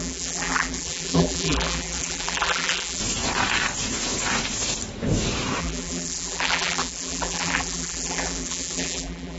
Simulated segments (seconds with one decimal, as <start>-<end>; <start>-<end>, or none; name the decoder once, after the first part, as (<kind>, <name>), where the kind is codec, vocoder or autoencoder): 0.0-3.0 (vocoder, BigVGAN v2); 5.6-9.4